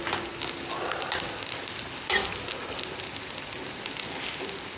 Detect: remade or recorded recorded